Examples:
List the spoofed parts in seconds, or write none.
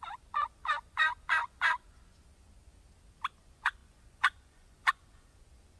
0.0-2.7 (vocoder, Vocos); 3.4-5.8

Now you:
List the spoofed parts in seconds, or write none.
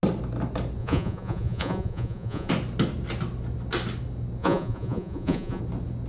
0.8-2.5 (vocoder, Vocos); 4.4-5.6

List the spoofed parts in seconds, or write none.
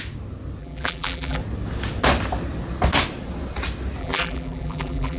0.6-1.4 (vocoder, BigVGAN v2); 4.0-5.2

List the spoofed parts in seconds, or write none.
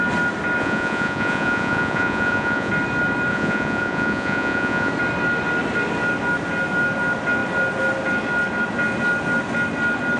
0.6-2.7 (vocoder, Vocos); 3.3-4.9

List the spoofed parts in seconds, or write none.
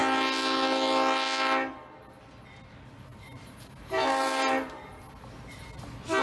3.1-5.0 (vocoder, BigVGAN v2)